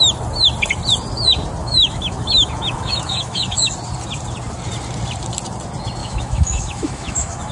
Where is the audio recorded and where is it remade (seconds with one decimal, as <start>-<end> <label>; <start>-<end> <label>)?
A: 0.0-1.6 recorded; 1.6-3.7 remade; 3.7-6.0 recorded; 6.0-7.5 remade